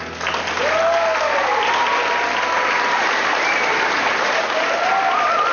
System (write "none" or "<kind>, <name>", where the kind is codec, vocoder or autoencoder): none